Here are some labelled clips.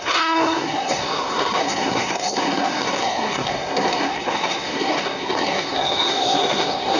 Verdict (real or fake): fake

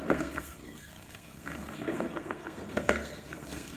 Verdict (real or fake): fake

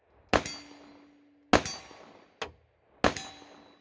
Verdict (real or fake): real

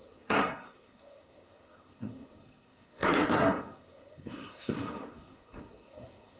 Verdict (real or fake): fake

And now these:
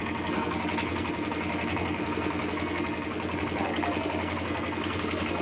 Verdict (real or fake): fake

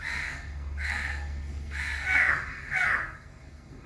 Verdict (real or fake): fake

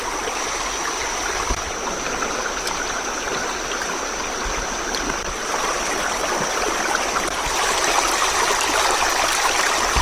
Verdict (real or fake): real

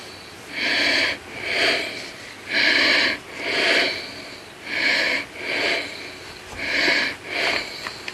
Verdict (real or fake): real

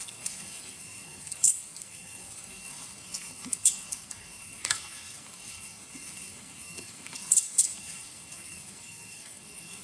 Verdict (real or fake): fake